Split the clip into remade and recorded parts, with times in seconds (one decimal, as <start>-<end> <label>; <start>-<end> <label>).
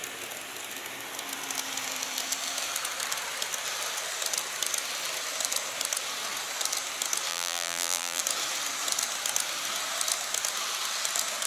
0.0-7.3 recorded; 7.3-8.2 remade; 8.2-11.5 recorded